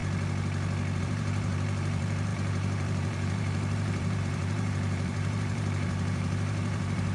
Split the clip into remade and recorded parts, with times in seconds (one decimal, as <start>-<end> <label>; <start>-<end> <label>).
0.0-1.0 recorded; 1.0-7.1 remade